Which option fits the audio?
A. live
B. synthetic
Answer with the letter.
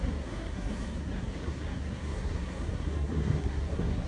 B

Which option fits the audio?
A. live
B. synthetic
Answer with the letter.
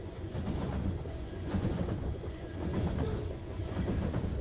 B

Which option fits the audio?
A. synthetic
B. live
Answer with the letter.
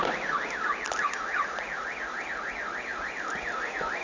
B